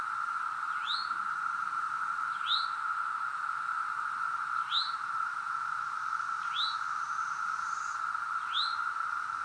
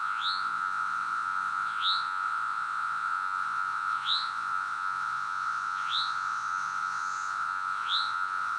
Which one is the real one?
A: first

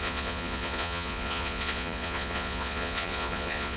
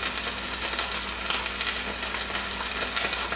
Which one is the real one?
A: second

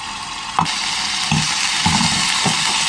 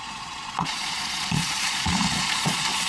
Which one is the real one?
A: first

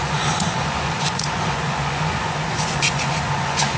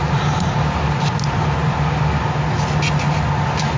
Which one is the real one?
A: second